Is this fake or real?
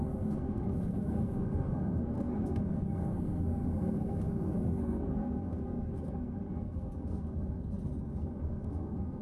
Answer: fake